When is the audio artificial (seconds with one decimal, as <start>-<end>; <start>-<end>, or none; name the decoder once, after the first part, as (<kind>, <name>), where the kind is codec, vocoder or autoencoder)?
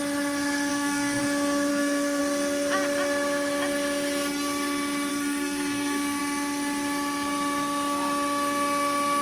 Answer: 0.7-1.2 (codec, SNAC); 1.7-2.2; 5.1-6.2